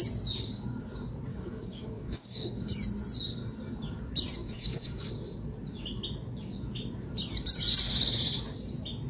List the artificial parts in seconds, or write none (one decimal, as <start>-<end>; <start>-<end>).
1.3-2.6; 4.4-5.1